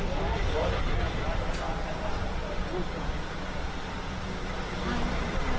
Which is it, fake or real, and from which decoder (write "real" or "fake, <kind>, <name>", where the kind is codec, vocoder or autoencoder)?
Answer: real